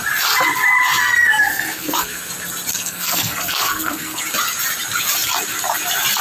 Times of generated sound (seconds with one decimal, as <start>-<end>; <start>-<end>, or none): 1.0-2.3; 2.7-4.2